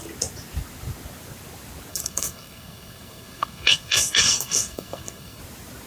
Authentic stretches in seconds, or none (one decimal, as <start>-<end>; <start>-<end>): 0.0-1.9; 5.4-5.9